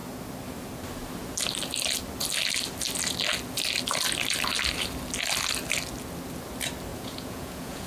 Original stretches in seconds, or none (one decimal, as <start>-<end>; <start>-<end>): 0.0-6.9